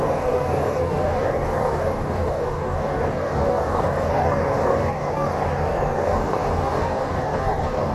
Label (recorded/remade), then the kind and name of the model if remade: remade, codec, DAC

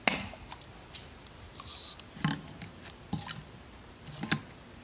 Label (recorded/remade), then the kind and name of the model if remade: recorded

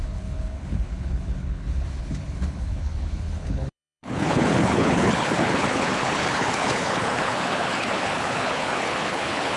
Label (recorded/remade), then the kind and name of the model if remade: remade, codec, HILCodec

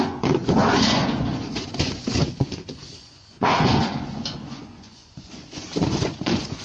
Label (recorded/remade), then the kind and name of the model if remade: remade, vocoder, Vocos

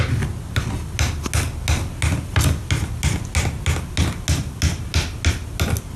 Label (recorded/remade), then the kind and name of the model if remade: recorded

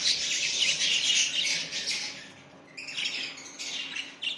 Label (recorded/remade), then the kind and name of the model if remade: recorded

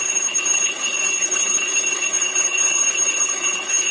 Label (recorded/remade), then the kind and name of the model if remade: remade, codec, HILCodec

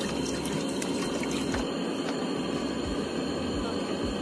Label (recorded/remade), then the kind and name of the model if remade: recorded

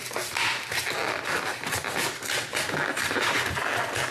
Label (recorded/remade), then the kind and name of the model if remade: recorded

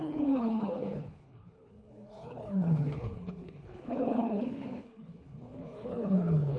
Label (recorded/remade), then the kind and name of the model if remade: remade, codec, HILCodec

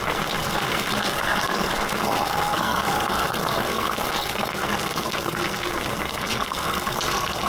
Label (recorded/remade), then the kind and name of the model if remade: remade, codec, SNAC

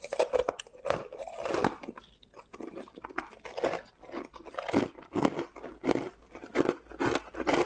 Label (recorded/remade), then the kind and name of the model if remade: recorded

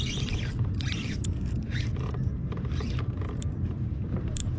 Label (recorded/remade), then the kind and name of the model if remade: remade, vocoder, BigVGAN v2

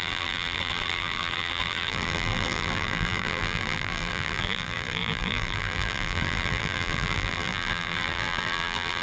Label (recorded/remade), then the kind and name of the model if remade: remade, vocoder, BigVGAN v2